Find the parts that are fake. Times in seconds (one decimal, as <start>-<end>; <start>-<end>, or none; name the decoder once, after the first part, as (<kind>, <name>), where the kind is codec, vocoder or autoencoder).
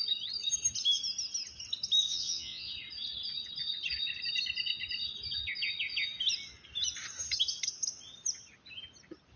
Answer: 2.0-2.7 (vocoder, Vocos)